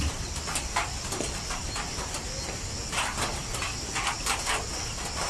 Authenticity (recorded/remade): recorded